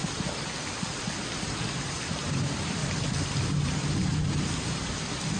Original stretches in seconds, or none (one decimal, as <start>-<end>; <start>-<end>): 2.8-5.0